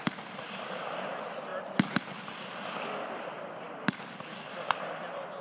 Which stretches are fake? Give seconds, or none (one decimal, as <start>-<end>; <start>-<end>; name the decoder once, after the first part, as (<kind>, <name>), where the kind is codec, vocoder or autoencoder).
none